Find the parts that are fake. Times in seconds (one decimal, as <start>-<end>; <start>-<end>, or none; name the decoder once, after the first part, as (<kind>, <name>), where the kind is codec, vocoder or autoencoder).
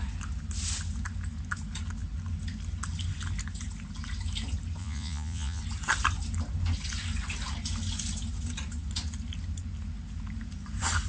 4.8-5.6 (vocoder, Vocos)